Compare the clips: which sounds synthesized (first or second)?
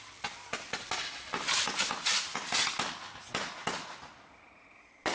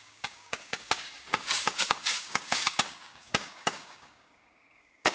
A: second